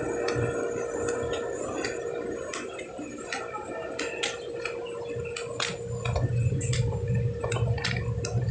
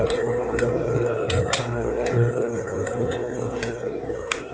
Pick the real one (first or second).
first